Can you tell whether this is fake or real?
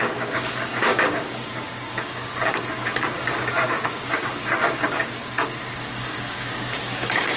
fake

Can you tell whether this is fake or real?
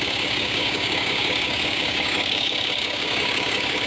fake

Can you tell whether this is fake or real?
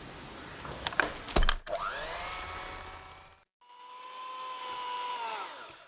real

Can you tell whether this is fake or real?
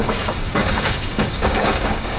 fake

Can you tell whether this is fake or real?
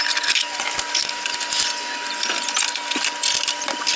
real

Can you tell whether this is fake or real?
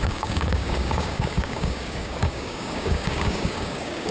fake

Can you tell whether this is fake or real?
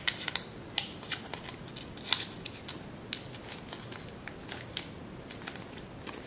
real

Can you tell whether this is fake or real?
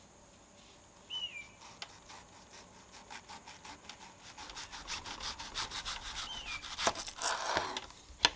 real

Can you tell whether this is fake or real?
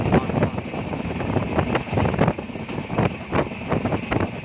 real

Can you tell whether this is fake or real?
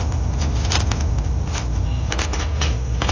real